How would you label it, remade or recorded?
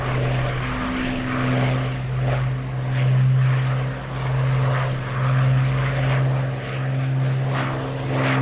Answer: recorded